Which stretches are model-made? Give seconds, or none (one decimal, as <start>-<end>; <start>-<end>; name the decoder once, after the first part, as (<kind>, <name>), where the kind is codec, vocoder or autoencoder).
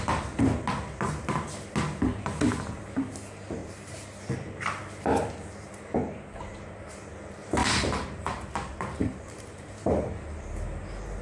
3.6-4.2 (vocoder, BigVGAN v2); 7.6-10.1